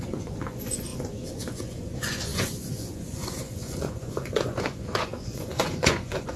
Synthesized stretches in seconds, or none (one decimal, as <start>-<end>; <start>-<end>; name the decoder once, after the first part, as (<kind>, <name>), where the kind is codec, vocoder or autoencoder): 0.0-6.4 (vocoder, Vocos)

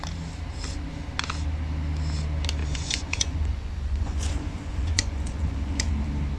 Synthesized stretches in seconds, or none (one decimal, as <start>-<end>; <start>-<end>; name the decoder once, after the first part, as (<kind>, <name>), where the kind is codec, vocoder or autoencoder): 2.6-5.9 (vocoder, Vocos)

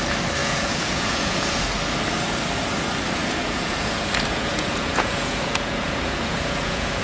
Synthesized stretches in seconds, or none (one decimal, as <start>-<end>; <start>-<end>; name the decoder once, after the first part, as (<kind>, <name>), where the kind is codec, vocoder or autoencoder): 0.4-1.6 (vocoder, Vocos); 3.2-7.0

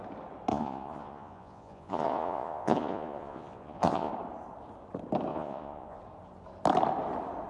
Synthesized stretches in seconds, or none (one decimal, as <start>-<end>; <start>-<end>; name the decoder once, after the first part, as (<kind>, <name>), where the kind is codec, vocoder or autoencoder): 0.5-4.1 (vocoder, Vocos); 5.3-6.0

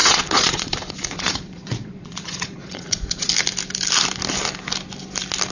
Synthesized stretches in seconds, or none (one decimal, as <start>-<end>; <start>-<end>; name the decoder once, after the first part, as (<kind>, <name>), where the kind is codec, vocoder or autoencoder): 0.0-3.3 (vocoder, Vocos)

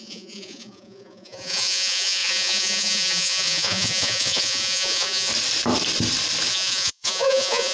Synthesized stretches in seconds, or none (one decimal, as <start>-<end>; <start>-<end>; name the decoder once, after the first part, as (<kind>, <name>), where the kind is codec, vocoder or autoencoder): 0.0-5.3 (vocoder, Vocos); 6.5-7.7

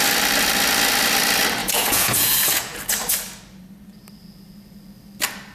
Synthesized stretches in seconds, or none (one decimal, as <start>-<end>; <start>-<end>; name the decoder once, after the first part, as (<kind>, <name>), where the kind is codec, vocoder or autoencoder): 1.6-2.8 (vocoder, Vocos)

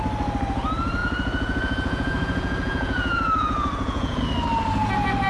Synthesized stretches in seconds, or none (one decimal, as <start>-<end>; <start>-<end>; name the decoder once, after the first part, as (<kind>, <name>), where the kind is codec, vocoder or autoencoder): 1.0-4.2 (vocoder, Vocos)